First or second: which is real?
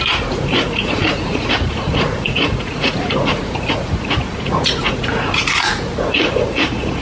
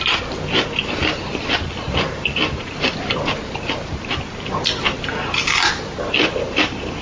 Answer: second